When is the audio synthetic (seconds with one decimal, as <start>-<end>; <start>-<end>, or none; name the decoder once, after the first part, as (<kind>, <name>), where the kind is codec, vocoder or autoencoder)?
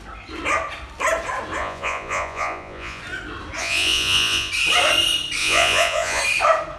1.6-3.0 (vocoder, Vocos); 3.6-4.5; 5.4-6.2